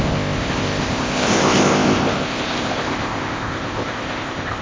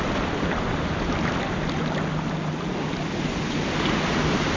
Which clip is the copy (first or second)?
first